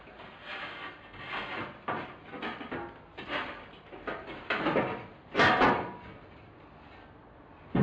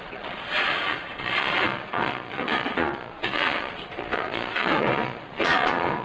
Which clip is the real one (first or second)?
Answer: first